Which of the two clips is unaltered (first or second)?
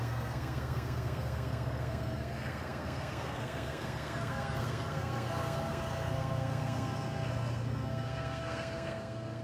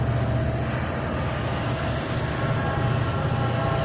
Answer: second